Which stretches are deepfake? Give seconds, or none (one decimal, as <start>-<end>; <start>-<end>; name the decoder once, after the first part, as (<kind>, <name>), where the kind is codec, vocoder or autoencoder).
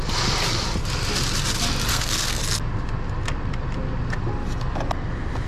1.9-2.4 (codec, SNAC)